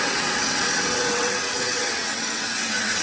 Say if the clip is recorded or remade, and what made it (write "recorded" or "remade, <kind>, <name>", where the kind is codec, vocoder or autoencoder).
remade, vocoder, WaveNeXt